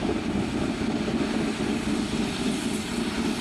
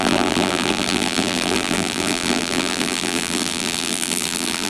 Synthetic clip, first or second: second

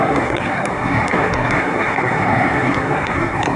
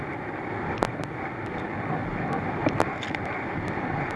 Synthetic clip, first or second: first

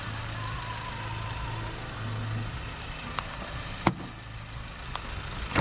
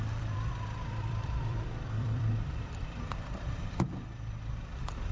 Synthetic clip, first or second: second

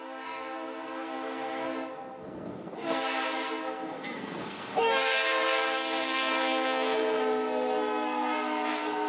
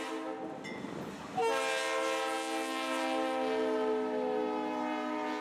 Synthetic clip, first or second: first